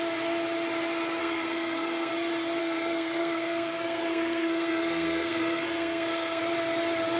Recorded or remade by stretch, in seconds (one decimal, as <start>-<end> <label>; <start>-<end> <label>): 0.0-1.2 recorded; 1.2-2.1 remade; 2.1-2.6 recorded; 2.6-6.4 remade; 6.4-7.2 recorded